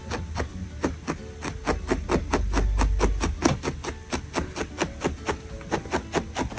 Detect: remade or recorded recorded